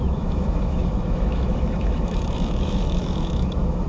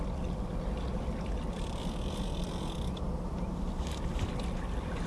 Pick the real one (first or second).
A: second